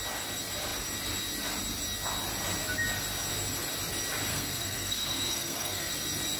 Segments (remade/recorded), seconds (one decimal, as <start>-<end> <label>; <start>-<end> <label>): 0.0-4.3 recorded; 4.3-5.9 remade; 5.9-6.4 recorded